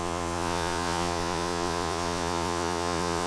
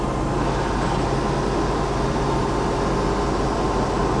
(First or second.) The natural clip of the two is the second